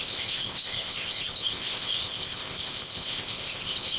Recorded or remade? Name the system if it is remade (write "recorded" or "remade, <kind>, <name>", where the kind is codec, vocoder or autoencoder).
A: remade, codec, ZipCodec